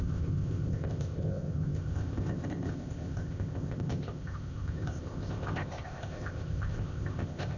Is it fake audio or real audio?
fake